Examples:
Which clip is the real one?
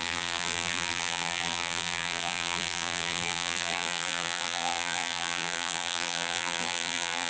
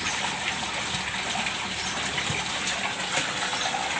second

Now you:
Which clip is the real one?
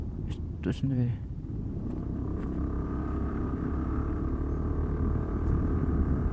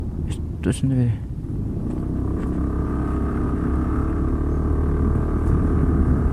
second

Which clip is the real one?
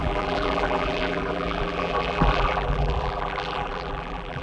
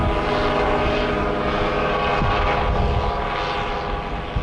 second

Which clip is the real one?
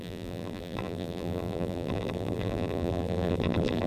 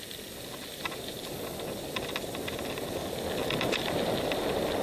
second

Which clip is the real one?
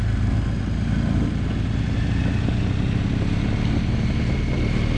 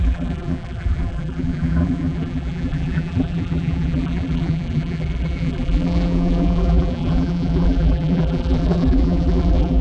first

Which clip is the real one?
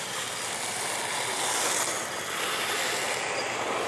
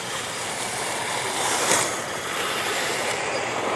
first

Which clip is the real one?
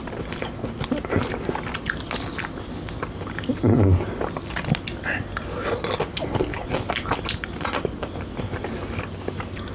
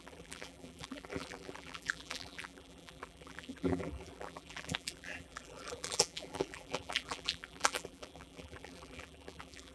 first